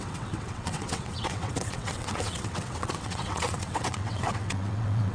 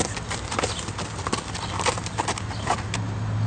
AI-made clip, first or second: first